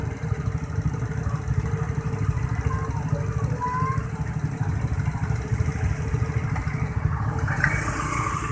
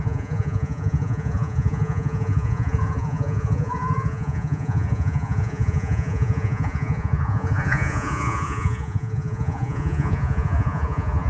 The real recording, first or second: first